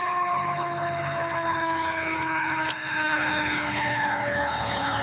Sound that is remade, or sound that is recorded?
remade